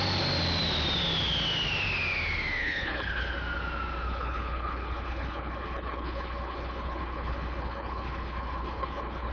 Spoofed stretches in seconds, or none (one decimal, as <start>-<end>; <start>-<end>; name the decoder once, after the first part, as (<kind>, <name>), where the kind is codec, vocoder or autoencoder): 2.6-3.3 (codec, HILCodec); 4.0-9.3